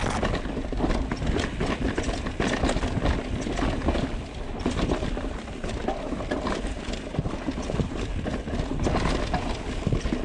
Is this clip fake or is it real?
real